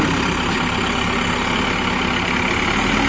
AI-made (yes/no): no